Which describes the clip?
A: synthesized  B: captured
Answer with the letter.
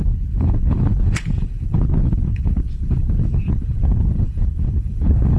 A